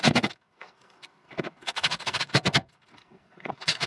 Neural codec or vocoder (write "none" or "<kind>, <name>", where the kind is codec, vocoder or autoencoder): codec, SNAC